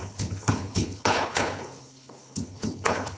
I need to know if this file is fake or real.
fake